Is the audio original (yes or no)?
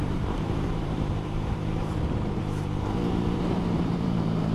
no